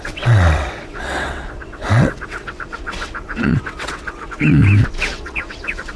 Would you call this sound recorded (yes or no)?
no